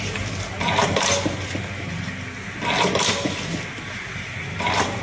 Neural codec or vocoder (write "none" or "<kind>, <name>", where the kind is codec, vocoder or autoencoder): none